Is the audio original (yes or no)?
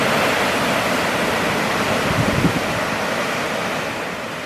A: yes